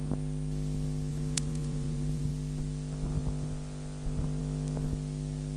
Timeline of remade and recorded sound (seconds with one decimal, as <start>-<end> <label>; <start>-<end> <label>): 0.0-1.1 recorded; 1.1-2.3 remade; 2.3-5.6 recorded